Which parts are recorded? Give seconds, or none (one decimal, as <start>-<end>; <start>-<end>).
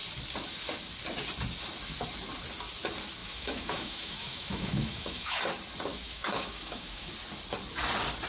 0.0-3.2; 5.4-5.9; 7.1-8.3